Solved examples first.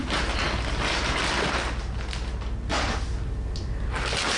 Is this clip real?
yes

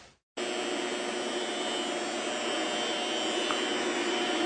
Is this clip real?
yes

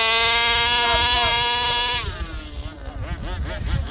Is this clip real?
yes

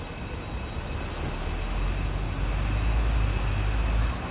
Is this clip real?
yes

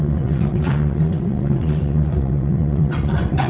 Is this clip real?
no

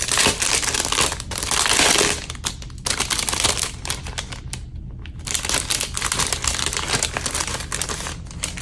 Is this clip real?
yes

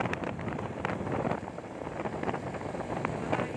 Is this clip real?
yes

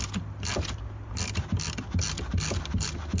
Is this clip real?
yes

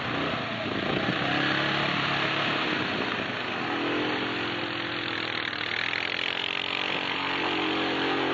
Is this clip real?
yes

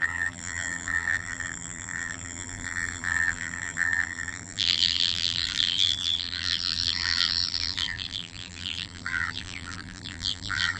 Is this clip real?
no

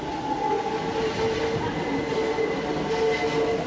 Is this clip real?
yes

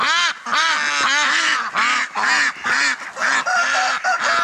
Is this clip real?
yes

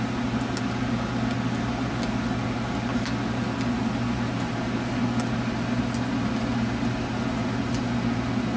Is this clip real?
yes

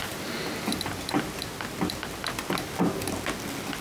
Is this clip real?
yes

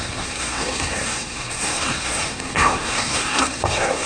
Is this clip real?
no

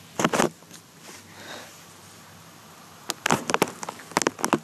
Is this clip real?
yes